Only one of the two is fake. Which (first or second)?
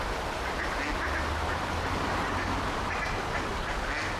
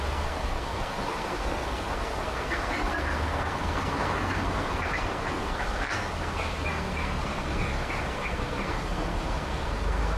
second